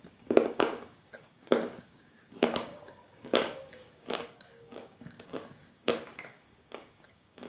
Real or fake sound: fake